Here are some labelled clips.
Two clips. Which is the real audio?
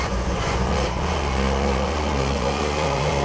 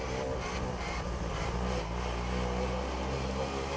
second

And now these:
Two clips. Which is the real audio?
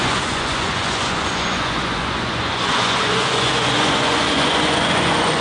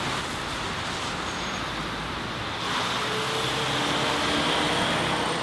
second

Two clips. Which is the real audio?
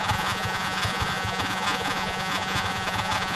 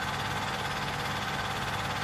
second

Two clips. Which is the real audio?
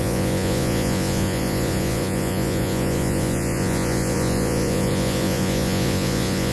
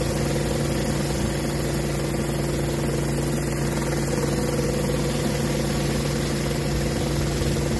second